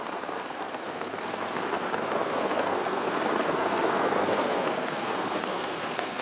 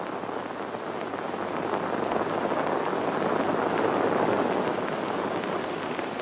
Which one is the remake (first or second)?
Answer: first